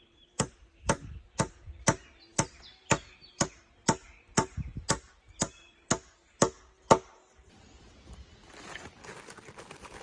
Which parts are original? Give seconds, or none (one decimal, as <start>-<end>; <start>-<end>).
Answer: 0.0-2.3; 3.5-10.0